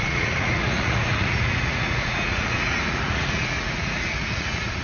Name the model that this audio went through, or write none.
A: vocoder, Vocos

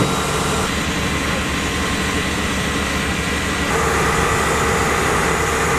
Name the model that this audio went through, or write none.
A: none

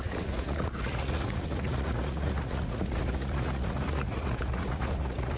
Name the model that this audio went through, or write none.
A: vocoder, Vocos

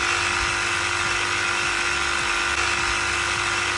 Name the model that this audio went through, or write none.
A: none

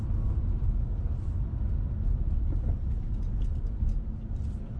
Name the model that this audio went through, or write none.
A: none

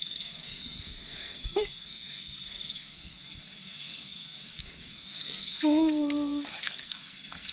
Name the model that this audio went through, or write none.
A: codec, SNAC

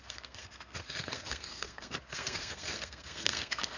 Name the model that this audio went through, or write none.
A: codec, SNAC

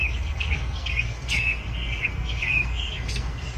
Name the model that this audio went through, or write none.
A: codec, SNAC